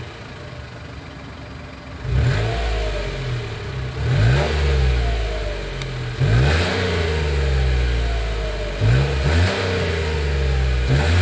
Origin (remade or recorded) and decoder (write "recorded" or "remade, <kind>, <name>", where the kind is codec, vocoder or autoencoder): recorded